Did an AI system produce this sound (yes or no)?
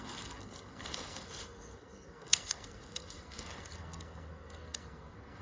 yes